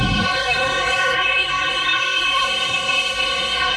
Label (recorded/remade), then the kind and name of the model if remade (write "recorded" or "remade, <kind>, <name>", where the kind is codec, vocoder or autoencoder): remade, codec, SNAC